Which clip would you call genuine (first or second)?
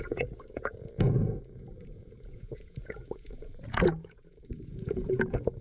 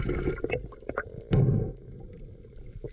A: second